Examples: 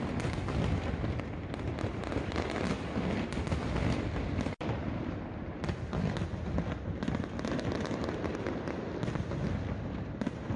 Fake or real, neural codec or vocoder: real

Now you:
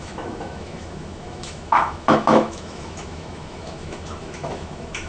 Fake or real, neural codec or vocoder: fake, autoencoder, DAC-VAE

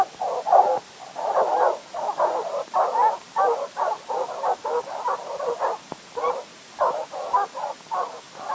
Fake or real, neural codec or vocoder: real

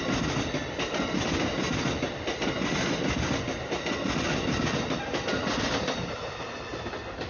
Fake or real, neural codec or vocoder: real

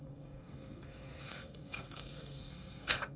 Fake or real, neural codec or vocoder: fake, codec, SNAC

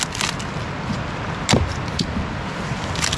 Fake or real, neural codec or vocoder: real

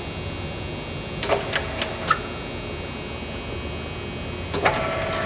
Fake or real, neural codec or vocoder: real